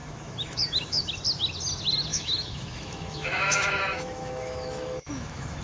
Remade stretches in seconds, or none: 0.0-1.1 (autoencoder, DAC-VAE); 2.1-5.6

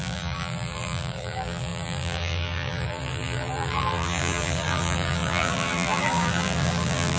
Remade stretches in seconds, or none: 0.0-7.2 (vocoder, BigVGAN v2)